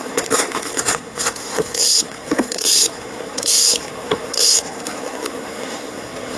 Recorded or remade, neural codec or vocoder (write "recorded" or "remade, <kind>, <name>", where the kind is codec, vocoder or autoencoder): remade, codec, SNAC